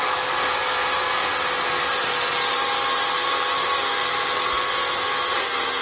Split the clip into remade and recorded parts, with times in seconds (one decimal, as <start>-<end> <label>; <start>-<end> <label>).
0.0-5.8 recorded